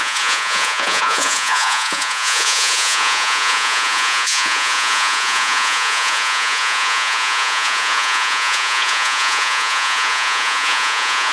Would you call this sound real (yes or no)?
no